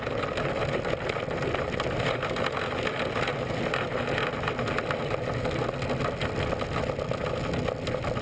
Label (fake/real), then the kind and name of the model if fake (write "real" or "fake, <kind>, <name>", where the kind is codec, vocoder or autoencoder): real